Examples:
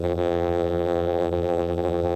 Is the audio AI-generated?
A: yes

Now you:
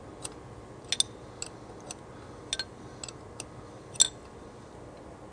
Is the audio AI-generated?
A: no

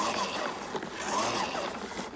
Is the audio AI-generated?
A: no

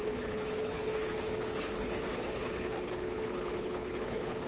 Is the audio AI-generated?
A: yes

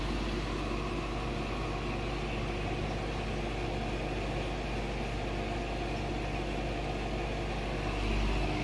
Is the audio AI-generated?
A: no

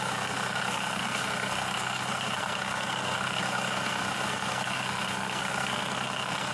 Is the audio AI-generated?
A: yes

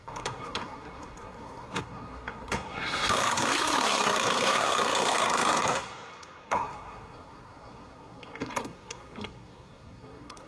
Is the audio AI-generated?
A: yes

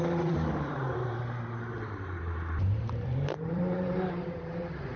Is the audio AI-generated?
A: yes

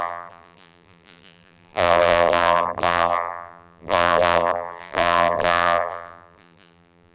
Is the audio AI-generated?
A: yes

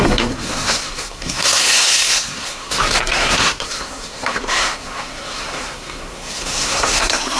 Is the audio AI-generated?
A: yes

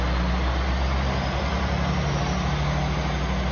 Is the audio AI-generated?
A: no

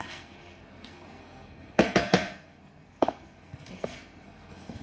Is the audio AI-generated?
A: yes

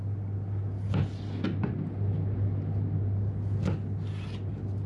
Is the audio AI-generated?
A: no